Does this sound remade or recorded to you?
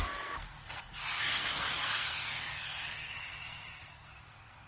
remade